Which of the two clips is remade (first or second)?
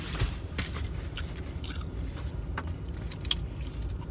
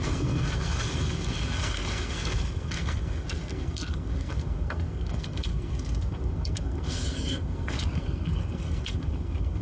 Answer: second